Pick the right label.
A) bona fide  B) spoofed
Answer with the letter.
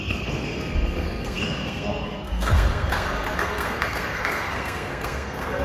B